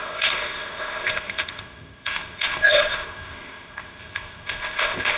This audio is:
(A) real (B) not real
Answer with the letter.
B